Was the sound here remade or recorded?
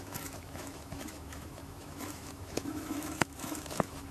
remade